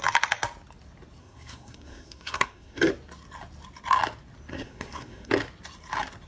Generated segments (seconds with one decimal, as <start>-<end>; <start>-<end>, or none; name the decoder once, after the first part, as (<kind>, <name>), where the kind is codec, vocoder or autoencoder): 1.2-2.9 (codec, SNAC); 4.5-5.3